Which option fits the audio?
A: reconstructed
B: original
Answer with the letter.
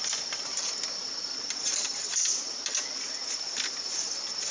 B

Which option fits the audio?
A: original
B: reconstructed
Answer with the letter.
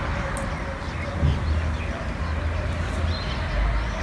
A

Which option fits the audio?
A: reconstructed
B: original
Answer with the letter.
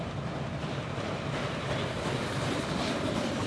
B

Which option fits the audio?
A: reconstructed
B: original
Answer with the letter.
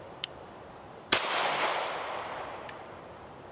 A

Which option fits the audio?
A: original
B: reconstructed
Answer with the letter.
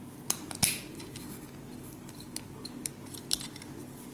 A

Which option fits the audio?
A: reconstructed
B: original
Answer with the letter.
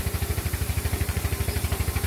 A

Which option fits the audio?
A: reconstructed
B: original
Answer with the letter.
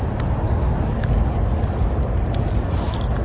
B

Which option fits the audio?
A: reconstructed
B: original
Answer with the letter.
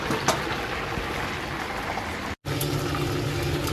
B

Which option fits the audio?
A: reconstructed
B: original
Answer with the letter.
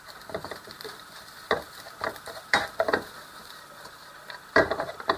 A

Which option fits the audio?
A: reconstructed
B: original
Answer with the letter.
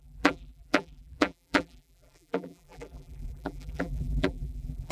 A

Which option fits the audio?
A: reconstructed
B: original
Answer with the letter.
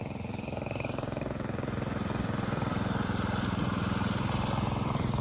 A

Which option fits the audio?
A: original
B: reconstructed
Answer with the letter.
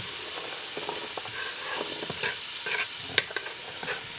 A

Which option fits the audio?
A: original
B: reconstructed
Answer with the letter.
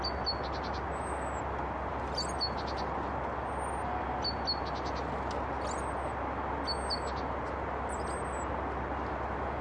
A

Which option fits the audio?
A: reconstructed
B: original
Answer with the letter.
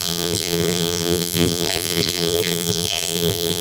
A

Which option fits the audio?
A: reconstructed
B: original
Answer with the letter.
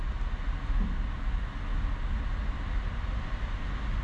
B